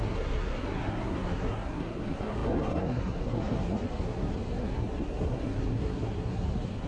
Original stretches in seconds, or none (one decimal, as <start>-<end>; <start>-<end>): none